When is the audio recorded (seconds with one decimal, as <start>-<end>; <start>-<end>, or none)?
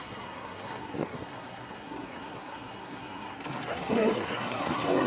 none